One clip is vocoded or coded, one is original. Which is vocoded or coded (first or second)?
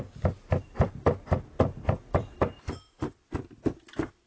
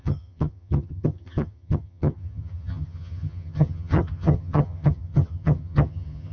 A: second